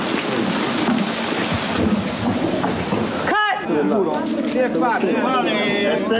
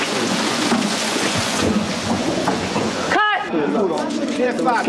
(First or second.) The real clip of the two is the first